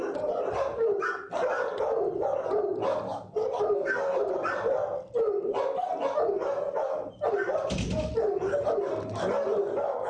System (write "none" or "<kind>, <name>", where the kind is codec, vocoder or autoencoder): none